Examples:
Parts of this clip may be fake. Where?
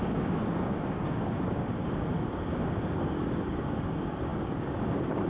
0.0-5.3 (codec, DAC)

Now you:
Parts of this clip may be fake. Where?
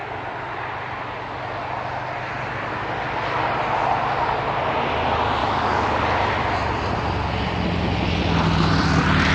5.4-6.0 (codec, DAC)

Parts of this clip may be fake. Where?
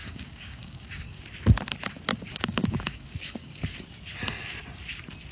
0.0-1.2 (codec, DAC); 2.1-3.6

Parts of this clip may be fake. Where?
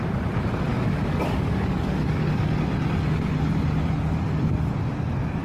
0.7-2.5 (codec, DAC)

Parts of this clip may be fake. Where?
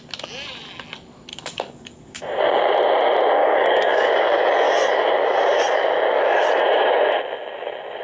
1.3-2.2 (codec, DAC); 3.4-4.1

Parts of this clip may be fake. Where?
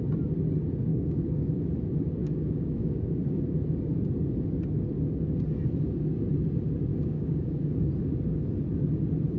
0.9-1.6 (codec, DAC); 2.2-3.4; 6.9-7.9